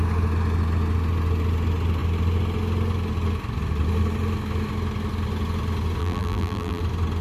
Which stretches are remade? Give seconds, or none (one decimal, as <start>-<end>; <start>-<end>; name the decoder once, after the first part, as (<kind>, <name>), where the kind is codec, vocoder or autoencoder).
6.0-6.8 (vocoder, BigVGAN v2)

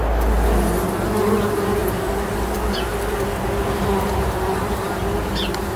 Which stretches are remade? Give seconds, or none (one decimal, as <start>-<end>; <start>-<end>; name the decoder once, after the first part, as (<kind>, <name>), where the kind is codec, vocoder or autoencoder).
none

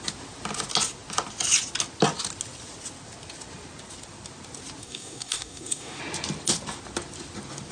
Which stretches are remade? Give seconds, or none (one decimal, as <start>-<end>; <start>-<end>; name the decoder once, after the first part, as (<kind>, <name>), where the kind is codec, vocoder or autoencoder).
4.8-6.0 (codec, DAC)